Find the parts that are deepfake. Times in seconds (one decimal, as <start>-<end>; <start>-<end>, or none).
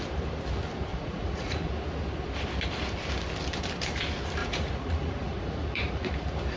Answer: 0.9-1.7; 4.4-6.1